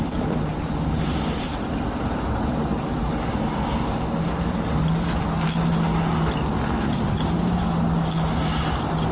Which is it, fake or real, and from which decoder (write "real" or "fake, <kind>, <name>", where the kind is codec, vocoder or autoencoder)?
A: real